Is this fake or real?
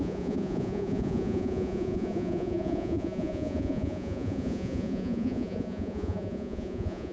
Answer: fake